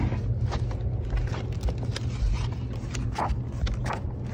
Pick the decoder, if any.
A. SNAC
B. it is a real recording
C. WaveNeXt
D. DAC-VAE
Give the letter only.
B